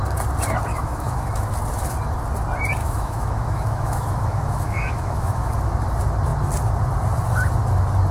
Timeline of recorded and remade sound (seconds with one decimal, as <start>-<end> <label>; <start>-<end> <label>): 0.0-0.7 recorded; 0.7-1.5 remade; 1.5-2.8 recorded; 2.8-5.5 remade; 5.5-8.1 recorded